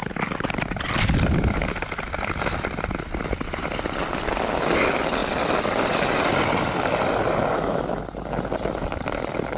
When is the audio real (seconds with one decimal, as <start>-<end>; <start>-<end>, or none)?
0.0-9.6